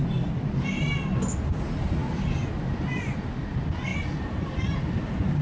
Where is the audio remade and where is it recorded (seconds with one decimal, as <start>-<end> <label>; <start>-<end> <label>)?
0.0-5.4 recorded